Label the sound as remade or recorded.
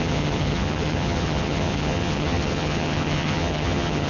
remade